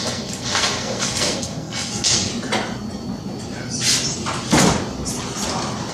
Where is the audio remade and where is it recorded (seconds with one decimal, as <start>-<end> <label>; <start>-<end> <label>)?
0.0-2.3 remade; 2.3-5.9 recorded